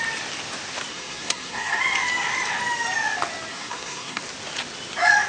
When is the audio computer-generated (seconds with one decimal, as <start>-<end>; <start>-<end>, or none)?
0.9-1.8; 3.5-4.2